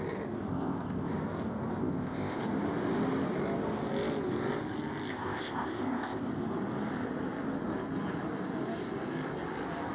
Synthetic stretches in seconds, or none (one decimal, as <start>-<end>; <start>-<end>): 0.5-1.1; 1.8-2.4; 5.1-6.3